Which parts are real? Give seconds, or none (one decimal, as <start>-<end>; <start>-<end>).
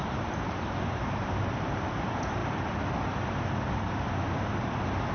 none